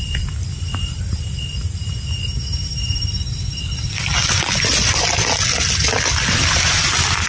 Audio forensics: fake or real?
real